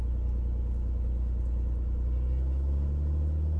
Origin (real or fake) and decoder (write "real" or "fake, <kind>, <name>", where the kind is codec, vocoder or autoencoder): real